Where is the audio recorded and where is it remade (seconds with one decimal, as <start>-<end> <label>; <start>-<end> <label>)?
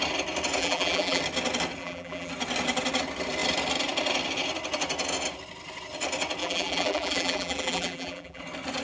0.0-0.6 recorded; 0.6-1.2 remade; 1.2-1.8 recorded; 1.8-2.3 remade; 2.3-6.4 recorded; 6.4-8.4 remade; 8.4-8.8 recorded